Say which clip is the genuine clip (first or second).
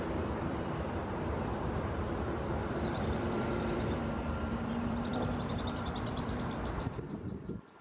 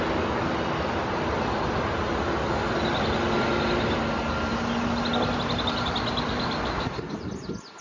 second